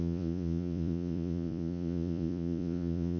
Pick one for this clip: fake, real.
fake